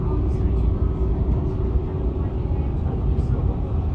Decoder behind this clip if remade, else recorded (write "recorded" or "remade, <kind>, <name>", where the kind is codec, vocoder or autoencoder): recorded